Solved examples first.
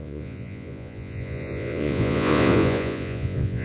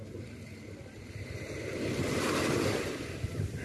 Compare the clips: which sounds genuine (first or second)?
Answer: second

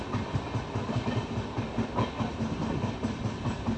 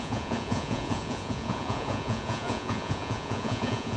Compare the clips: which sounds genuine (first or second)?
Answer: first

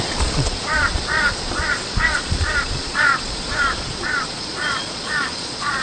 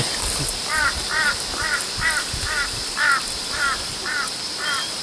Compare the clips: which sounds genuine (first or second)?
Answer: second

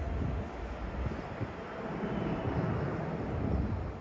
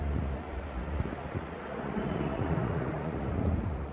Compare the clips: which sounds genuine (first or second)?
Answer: first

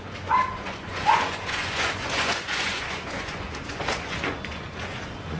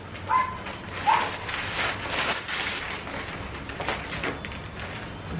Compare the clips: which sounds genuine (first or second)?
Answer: second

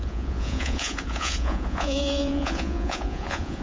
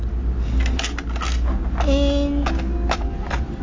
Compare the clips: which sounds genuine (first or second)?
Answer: second